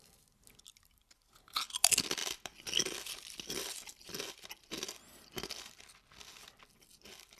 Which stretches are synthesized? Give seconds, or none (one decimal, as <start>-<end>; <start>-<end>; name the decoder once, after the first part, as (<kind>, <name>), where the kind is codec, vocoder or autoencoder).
none